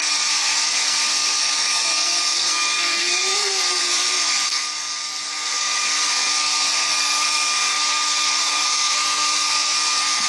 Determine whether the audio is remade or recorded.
remade